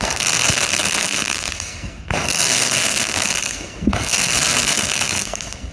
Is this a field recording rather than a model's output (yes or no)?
no